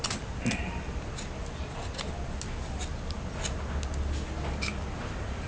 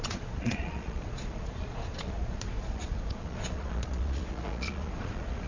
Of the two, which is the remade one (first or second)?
second